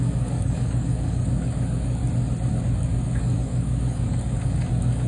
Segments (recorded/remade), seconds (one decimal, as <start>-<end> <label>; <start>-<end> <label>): 0.0-2.0 remade; 2.0-2.5 recorded; 2.5-5.1 remade